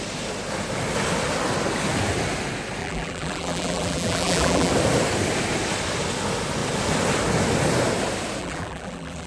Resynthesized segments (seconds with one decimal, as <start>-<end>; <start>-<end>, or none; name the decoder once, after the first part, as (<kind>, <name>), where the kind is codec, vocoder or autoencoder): 2.8-4.7 (vocoder, BigVGAN v2); 8.4-9.3